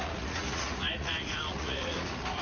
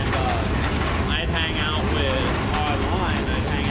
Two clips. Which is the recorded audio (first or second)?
second